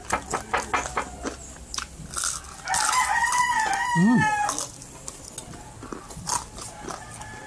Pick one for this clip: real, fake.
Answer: real